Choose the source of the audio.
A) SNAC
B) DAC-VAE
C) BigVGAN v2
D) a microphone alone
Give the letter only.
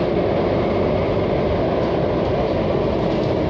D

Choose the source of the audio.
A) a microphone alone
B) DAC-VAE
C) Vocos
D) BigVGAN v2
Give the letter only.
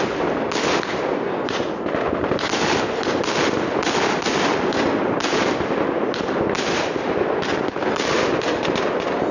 A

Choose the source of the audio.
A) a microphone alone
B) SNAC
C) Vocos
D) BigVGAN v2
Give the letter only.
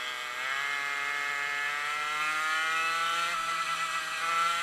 A